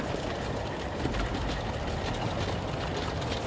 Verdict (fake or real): real